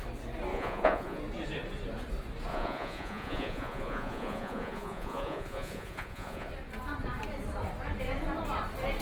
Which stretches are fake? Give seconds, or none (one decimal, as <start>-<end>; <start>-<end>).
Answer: 0.5-1.2; 2.5-6.5